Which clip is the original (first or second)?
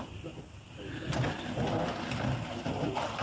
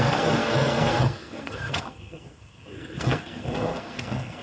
first